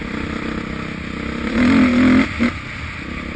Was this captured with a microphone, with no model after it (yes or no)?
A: yes